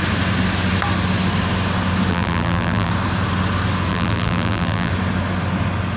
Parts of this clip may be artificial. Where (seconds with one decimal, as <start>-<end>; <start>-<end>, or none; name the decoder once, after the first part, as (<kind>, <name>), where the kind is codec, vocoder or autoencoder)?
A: 2.1-2.9 (vocoder, BigVGAN v2); 3.9-4.9